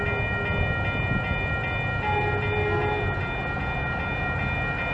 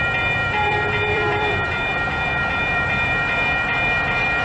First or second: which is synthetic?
second